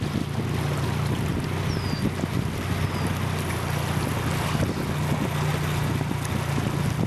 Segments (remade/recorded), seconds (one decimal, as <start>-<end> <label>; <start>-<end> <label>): 0.0-7.1 recorded